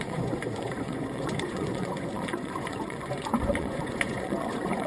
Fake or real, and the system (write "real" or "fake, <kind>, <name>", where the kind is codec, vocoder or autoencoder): fake, vocoder, Vocos